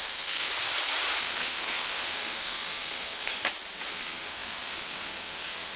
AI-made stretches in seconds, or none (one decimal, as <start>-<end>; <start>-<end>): 0.0-0.5; 1.2-3.3; 3.9-5.8